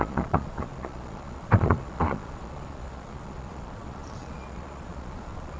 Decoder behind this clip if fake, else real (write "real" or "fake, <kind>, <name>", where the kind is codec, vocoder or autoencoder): fake, vocoder, Vocos